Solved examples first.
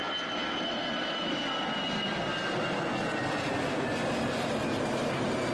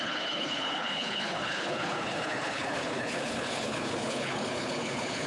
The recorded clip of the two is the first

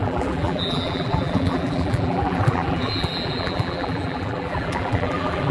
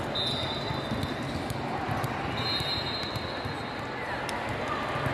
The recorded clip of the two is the second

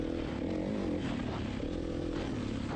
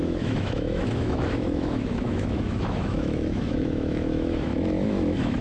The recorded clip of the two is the first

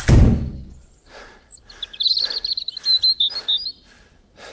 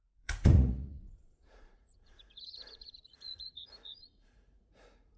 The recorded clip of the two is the first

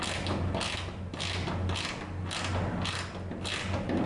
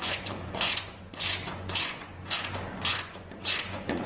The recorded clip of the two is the first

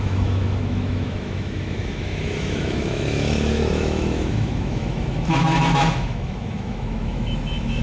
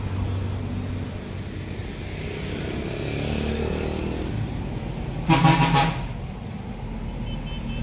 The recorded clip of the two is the second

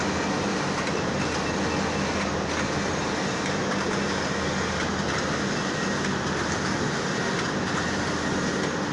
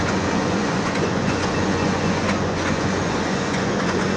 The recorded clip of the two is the first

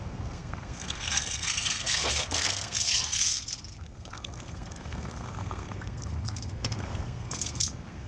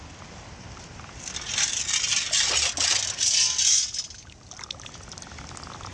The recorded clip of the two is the second